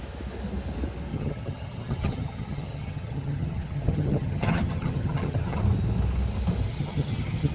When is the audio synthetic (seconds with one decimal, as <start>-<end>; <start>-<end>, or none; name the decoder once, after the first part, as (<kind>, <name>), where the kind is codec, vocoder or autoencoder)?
1.1-5.6 (vocoder, HiFi-GAN); 6.7-7.5